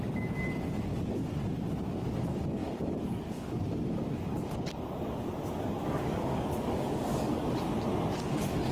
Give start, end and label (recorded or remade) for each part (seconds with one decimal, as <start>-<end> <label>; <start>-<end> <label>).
0.0-2.6 recorded; 2.6-4.0 remade; 4.0-5.8 recorded; 5.8-7.6 remade; 7.6-8.7 recorded